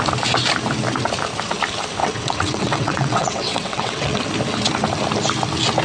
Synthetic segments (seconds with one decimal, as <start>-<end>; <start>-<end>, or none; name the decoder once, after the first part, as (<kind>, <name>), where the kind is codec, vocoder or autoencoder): 2.0-4.2 (vocoder, WaveNeXt)